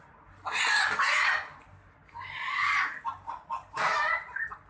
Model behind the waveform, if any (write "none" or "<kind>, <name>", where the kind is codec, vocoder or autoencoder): none